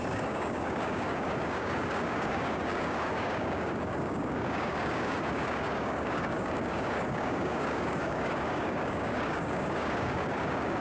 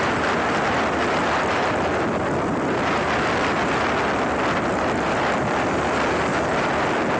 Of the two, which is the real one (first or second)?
second